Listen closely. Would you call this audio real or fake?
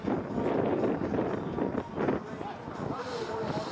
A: real